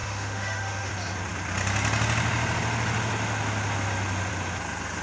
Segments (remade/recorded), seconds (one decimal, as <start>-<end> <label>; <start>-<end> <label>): 0.0-0.9 remade; 0.9-5.0 recorded